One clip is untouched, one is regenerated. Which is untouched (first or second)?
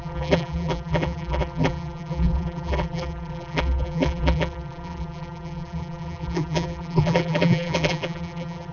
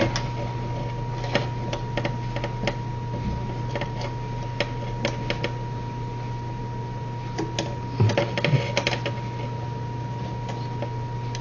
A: second